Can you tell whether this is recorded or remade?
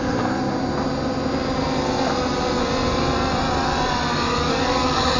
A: recorded